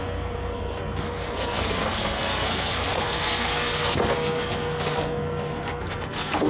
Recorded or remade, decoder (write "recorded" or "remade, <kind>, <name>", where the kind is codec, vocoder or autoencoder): remade, codec, SNAC